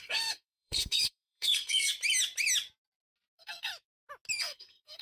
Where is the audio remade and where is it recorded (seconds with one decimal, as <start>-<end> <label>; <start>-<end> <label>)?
0.0-1.9 remade; 1.9-3.3 recorded; 3.3-3.7 remade; 3.7-4.4 recorded; 4.4-5.0 remade